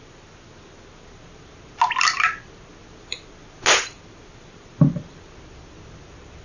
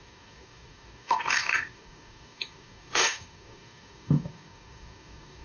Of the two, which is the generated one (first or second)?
second